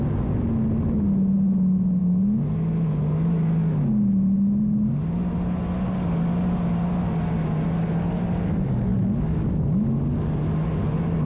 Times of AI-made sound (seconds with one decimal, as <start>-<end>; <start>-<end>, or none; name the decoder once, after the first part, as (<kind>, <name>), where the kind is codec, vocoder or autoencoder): none